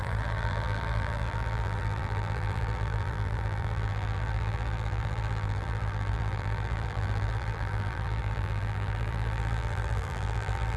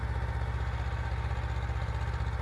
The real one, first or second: second